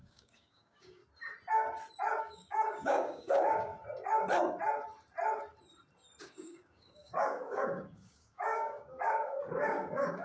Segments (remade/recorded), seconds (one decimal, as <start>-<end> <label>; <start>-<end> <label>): 0.0-1.0 remade; 1.0-2.2 recorded; 2.2-3.7 remade; 3.7-6.2 recorded; 6.2-10.2 remade

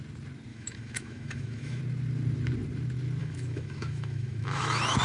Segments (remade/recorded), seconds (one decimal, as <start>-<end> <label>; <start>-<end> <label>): 0.0-0.5 recorded; 0.5-1.8 remade; 1.8-3.2 recorded; 3.2-5.0 remade

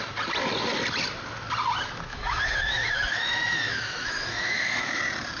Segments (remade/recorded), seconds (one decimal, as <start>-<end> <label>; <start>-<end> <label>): 0.0-2.1 recorded; 2.1-5.0 remade; 5.0-5.4 recorded

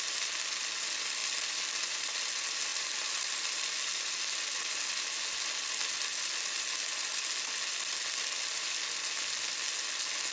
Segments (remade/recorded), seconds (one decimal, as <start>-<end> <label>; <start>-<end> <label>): 0.0-10.3 recorded

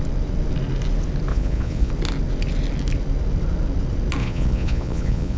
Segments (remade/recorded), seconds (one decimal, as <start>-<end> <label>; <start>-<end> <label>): 0.0-1.3 recorded; 1.3-1.9 remade; 1.9-4.2 recorded; 4.2-5.4 remade